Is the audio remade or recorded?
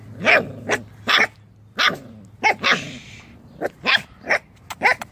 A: recorded